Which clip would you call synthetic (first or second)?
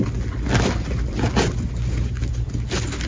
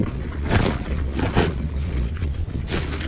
second